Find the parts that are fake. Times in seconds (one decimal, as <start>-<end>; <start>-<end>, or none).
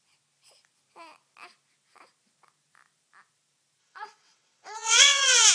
3.8-5.5